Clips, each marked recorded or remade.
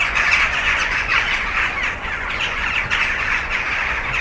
remade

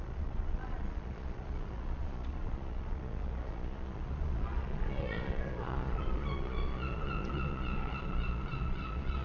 remade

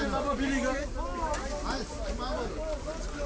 recorded